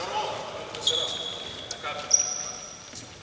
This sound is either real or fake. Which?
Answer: real